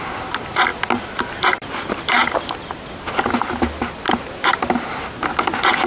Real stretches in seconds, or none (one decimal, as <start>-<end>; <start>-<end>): 0.0-5.9